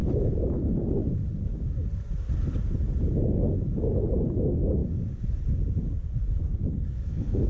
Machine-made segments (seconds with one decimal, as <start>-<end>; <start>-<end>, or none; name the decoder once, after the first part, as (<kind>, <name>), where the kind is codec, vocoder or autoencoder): 6.7-7.5 (codec, SNAC)